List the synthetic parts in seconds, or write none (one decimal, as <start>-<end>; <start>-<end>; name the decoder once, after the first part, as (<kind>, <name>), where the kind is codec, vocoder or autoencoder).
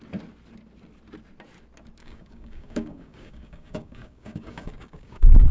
2.0-5.5 (codec, DAC)